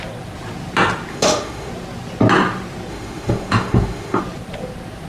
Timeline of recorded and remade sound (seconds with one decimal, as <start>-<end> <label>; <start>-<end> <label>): 0.0-1.1 recorded; 1.1-1.7 remade; 1.7-2.9 recorded; 2.9-4.2 remade; 4.2-5.1 recorded